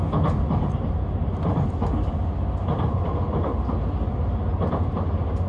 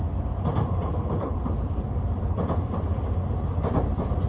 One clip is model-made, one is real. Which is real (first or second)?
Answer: first